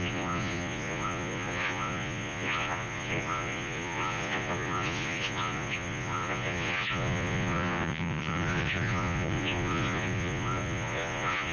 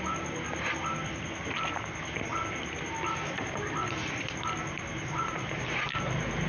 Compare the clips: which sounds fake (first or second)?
first